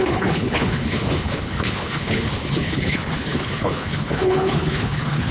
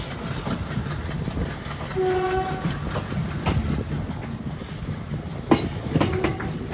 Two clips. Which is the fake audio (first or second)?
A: first